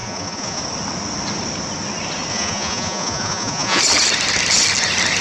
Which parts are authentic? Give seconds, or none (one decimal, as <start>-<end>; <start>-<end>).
0.6-2.3; 3.8-5.2